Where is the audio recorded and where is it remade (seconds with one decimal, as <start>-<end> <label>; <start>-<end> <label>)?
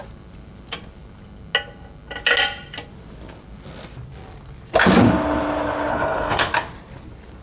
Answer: 0.0-5.9 recorded; 5.9-6.5 remade; 6.5-7.4 recorded